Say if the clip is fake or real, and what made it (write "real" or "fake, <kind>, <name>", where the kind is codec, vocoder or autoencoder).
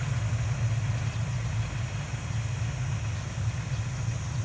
real